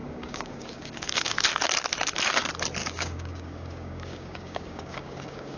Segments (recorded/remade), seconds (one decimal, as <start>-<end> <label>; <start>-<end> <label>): 0.0-1.3 remade; 1.3-2.8 recorded; 2.8-5.6 remade